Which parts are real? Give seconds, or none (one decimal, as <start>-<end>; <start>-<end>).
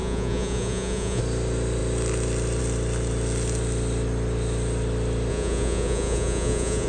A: 1.2-5.3